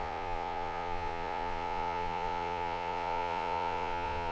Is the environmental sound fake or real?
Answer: fake